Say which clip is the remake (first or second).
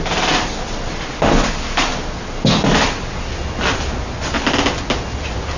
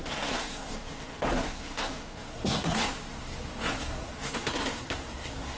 second